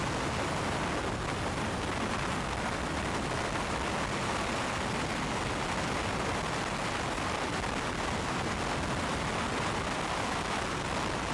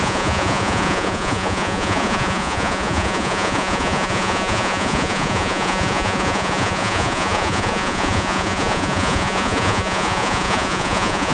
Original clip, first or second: first